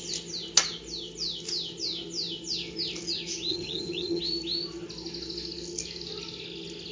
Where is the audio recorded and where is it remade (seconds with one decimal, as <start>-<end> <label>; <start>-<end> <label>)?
0.0-3.5 recorded; 3.5-4.2 remade; 4.2-6.9 recorded

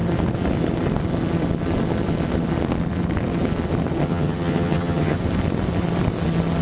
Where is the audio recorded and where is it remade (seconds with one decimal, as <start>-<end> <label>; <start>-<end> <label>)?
0.0-4.0 recorded; 4.0-5.2 remade; 5.2-6.6 recorded

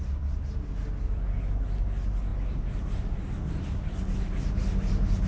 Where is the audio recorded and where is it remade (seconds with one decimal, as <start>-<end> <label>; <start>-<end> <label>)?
0.0-5.3 recorded

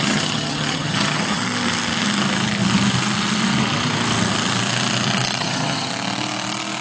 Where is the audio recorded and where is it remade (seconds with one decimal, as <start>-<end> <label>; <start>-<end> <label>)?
0.0-1.4 remade; 1.4-5.4 recorded; 5.4-5.9 remade; 5.9-6.8 recorded

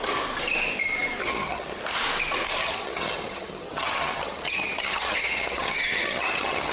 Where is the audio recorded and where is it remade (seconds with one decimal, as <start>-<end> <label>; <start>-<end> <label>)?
0.0-1.2 recorded; 1.2-1.8 remade; 1.8-2.6 recorded; 2.6-6.7 remade